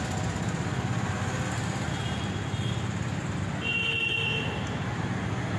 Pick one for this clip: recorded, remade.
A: recorded